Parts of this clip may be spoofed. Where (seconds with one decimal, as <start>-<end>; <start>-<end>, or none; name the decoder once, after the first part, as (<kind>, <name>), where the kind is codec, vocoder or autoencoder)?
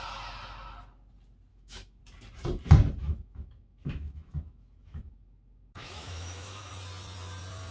1.5-2.0 (autoencoder, DAC-VAE); 3.0-6.7